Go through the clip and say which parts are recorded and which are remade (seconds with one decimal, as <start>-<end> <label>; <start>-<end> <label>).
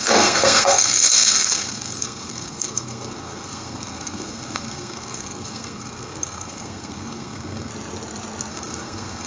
0.0-7.7 remade; 7.7-8.5 recorded; 8.5-9.3 remade